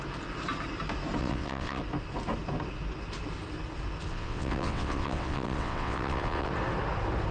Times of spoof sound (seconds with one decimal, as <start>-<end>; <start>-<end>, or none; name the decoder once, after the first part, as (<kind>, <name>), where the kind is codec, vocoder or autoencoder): 1.2-1.8 (vocoder, WaveNeXt); 4.1-6.5